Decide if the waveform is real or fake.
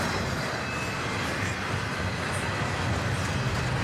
real